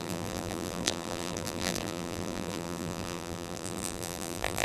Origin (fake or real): fake